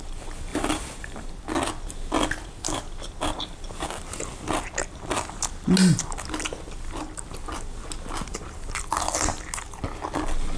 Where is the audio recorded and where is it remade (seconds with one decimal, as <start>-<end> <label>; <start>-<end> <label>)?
0.0-0.5 recorded; 0.5-1.3 remade; 1.3-10.6 recorded